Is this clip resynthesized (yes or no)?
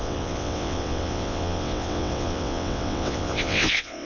yes